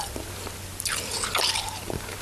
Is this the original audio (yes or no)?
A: yes